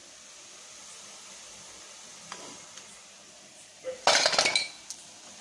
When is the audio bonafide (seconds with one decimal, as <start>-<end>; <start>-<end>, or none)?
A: 0.0-5.4